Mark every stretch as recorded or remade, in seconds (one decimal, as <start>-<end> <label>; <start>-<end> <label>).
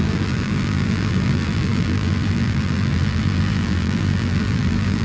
0.0-5.0 remade